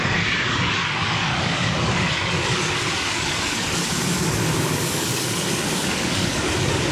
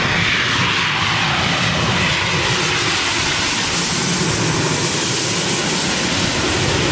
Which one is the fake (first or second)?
first